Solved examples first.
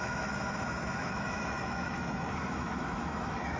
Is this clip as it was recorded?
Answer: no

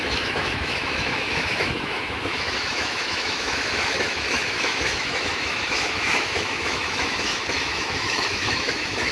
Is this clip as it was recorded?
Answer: no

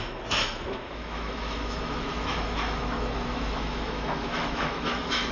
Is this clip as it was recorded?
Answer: no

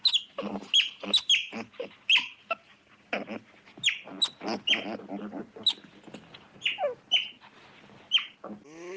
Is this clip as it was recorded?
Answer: yes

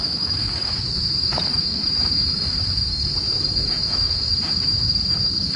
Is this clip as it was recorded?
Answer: no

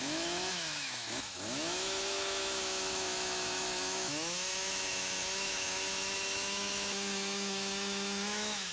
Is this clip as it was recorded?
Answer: no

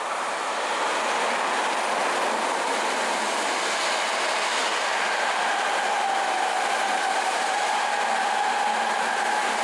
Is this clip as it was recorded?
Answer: yes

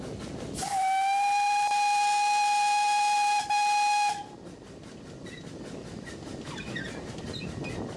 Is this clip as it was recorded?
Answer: yes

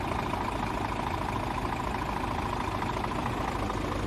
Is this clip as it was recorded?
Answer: yes